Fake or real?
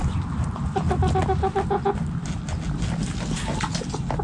real